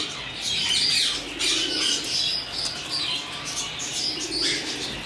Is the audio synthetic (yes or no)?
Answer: no